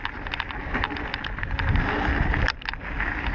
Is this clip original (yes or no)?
yes